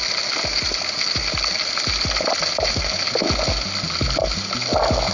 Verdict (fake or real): real